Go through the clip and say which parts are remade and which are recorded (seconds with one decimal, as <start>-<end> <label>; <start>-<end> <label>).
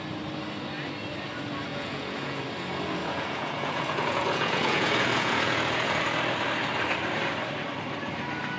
0.0-1.7 recorded; 1.7-2.4 remade; 2.4-3.0 recorded; 3.0-6.0 remade; 6.0-8.6 recorded